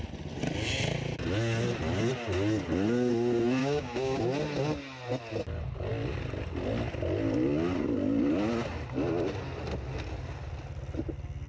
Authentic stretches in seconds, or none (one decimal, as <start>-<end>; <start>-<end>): 0.0-3.6; 4.2-11.5